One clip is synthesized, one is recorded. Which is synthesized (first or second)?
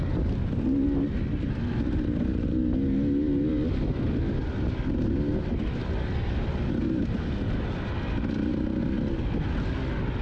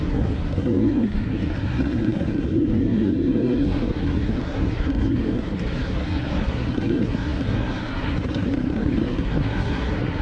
second